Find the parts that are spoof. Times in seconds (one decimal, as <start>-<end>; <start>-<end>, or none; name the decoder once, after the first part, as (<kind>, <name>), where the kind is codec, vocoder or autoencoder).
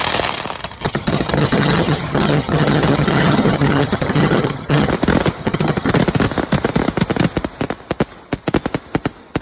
0.6-4.9 (vocoder, HiFi-GAN); 5.4-5.9